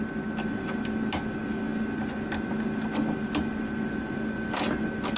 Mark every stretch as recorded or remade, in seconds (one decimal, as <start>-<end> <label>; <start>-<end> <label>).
0.0-5.2 recorded